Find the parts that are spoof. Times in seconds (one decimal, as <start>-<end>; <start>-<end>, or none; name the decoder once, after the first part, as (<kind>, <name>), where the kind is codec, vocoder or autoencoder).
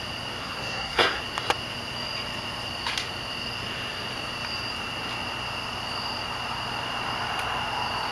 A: 0.4-1.2 (codec, SNAC)